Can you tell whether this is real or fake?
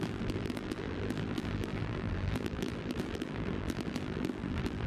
fake